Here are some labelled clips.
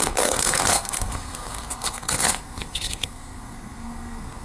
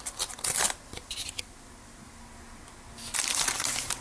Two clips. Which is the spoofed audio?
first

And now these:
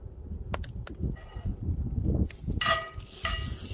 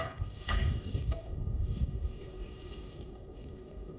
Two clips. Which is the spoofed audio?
second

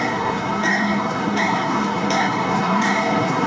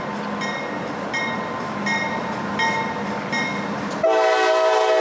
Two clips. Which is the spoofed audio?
first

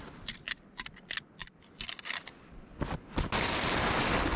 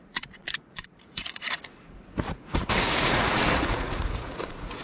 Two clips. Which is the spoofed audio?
second